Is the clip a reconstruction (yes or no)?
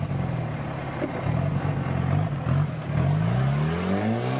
no